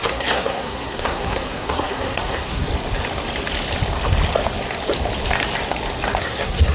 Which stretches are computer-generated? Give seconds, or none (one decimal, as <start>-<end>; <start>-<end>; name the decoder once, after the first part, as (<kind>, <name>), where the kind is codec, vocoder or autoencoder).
0.0-2.7 (codec, SNAC); 6.2-6.7